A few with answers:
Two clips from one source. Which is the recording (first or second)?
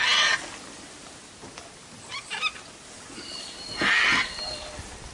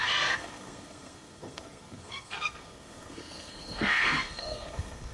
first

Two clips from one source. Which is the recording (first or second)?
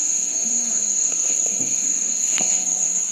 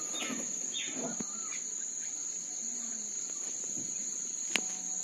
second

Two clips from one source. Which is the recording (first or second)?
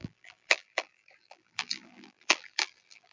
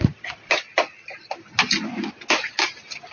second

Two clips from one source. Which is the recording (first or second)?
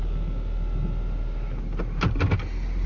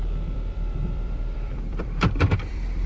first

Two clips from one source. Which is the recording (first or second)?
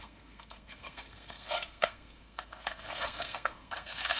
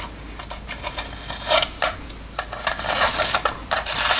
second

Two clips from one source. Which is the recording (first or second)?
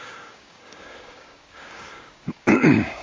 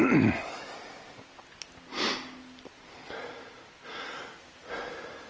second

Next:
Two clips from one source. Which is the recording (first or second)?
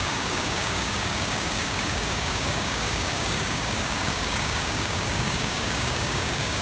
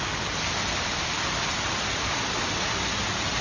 second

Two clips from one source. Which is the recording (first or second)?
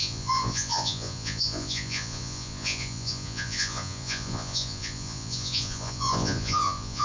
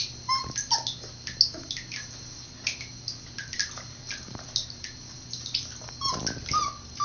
second